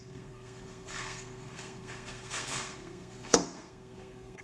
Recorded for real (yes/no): no